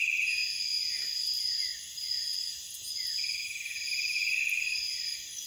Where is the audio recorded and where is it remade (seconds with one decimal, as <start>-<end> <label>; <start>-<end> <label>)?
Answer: 0.0-5.5 recorded